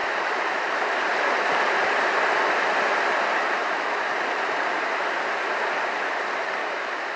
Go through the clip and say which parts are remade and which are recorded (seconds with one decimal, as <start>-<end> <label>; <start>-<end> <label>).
0.0-0.5 remade; 0.5-3.6 recorded; 3.6-4.1 remade; 4.1-6.6 recorded; 6.6-7.2 remade